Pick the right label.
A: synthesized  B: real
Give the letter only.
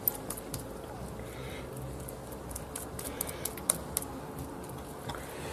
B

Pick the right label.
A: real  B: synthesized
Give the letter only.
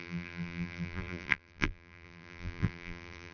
B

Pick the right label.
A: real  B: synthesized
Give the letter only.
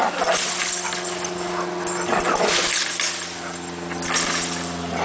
A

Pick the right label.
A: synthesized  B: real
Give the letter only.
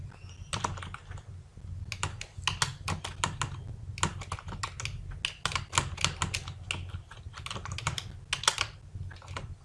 B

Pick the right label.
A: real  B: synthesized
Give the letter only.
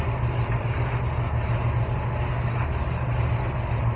A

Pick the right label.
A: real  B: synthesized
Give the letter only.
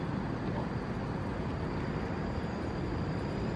A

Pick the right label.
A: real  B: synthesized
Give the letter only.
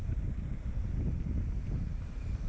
A